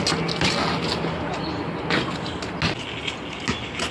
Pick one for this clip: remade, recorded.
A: recorded